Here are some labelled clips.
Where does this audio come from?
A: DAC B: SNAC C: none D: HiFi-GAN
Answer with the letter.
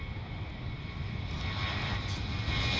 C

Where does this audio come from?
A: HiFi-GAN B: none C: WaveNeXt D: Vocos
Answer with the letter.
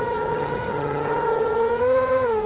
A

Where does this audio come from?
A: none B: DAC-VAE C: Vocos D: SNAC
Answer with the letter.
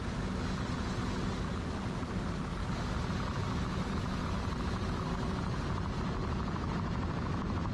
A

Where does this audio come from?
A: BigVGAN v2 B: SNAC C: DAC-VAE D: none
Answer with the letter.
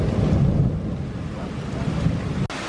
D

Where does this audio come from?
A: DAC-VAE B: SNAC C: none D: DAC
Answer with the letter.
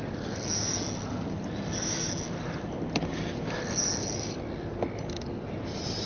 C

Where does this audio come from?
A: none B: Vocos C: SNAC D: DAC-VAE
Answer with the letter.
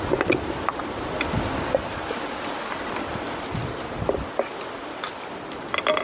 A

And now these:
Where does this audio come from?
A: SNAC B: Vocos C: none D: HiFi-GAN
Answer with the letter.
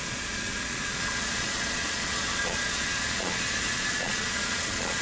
B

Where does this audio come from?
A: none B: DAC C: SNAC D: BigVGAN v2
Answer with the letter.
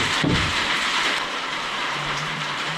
D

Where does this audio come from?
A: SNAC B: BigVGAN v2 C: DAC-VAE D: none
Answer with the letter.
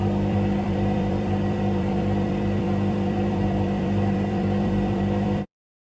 B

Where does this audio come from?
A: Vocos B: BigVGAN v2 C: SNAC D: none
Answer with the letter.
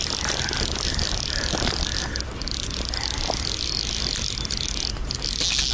D